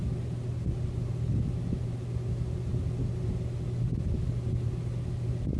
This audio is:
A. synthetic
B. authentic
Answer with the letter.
B